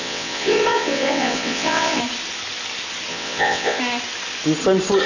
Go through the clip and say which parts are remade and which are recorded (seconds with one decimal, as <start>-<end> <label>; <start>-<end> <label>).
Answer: 0.0-2.0 remade; 2.0-3.1 recorded; 3.1-3.8 remade; 3.8-5.1 recorded